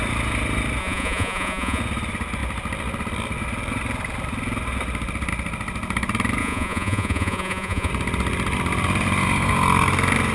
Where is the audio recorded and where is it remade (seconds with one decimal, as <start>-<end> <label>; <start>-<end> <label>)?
0.0-0.8 recorded; 0.8-1.8 remade; 1.8-6.4 recorded; 6.4-7.9 remade; 7.9-10.3 recorded